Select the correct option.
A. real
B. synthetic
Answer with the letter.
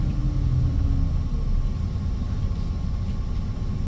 A